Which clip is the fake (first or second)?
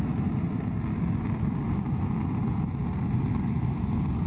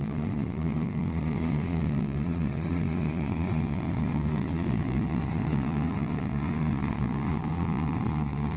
second